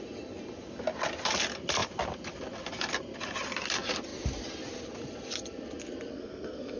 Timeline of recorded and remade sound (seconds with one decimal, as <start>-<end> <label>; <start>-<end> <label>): 0.0-6.1 recorded; 6.1-6.8 remade